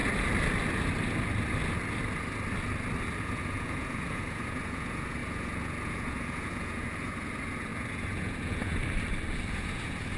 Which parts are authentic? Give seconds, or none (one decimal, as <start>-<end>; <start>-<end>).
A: 0.0-3.2; 8.8-9.5